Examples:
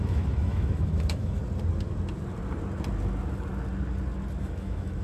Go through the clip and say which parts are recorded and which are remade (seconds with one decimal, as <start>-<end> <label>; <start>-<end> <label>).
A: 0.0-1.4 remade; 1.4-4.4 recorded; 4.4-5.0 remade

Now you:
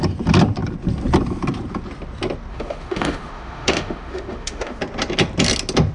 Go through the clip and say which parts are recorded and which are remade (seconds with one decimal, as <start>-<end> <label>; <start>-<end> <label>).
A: 0.0-2.5 recorded; 2.5-4.8 remade; 4.8-5.9 recorded

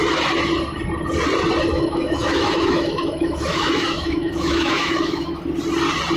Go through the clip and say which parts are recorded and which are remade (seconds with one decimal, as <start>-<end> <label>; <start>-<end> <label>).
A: 0.0-1.7 recorded; 1.7-5.4 remade; 5.4-6.2 recorded